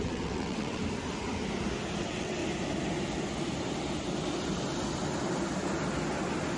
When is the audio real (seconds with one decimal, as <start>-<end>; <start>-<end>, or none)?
0.8-2.0; 2.4-6.6